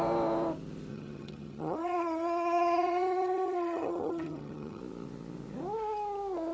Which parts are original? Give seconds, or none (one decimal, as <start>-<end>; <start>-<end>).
0.0-0.9; 4.8-6.5

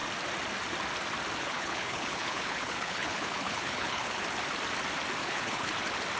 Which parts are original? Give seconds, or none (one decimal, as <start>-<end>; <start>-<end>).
0.0-1.4; 4.2-5.2; 5.7-6.2

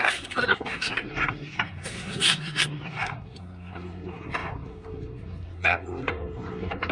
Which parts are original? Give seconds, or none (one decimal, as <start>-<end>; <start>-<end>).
none

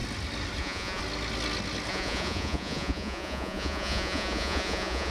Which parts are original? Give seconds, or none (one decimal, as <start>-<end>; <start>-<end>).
0.0-0.6; 1.0-1.9